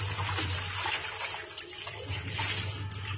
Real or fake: real